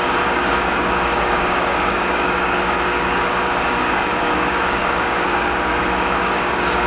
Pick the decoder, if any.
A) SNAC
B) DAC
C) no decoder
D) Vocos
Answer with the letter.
B